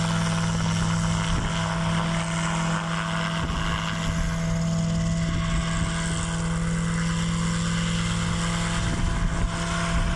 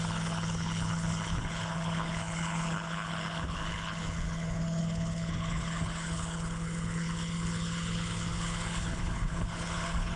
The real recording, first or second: first